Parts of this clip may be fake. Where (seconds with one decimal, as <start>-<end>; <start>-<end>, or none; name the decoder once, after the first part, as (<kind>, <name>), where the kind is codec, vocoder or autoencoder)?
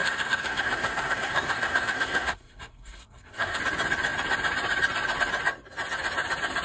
0.0-3.6 (codec, SNAC)